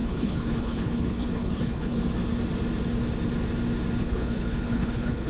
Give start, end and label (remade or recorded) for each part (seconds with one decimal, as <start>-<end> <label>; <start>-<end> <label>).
0.0-2.0 remade; 2.0-4.0 recorded; 4.0-5.3 remade